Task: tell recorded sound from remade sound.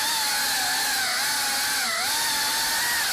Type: recorded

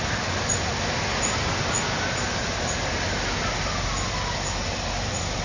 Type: recorded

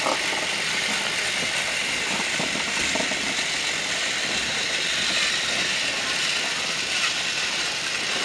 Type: recorded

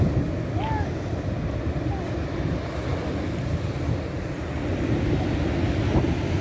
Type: recorded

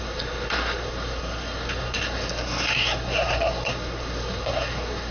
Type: remade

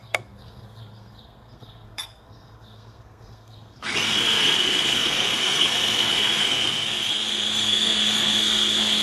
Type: remade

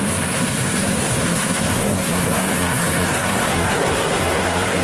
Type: remade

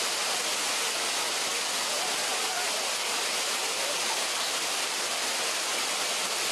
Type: recorded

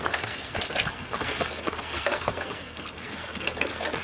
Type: remade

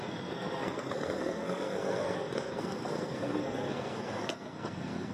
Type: remade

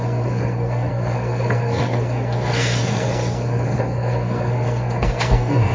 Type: remade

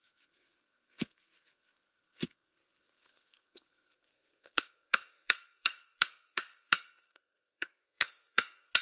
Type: remade